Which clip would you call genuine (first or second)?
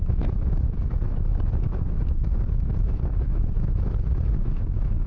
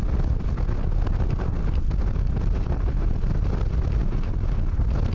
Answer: second